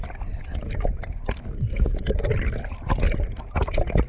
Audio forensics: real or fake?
real